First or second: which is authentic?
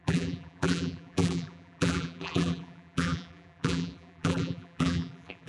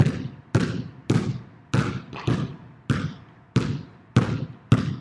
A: second